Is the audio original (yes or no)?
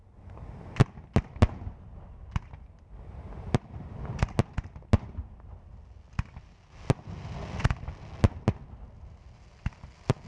yes